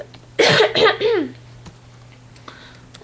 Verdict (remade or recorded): recorded